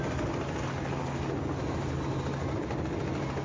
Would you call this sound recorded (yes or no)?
yes